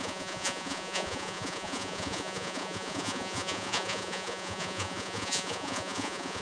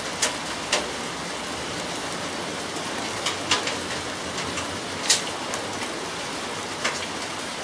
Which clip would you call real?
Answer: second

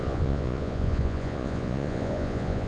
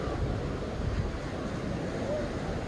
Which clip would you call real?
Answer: second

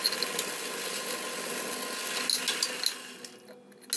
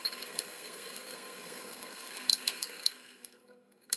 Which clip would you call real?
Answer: first